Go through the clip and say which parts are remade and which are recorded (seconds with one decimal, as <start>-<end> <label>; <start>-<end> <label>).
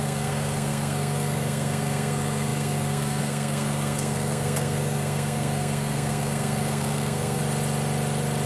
0.0-7.4 remade; 7.4-8.5 recorded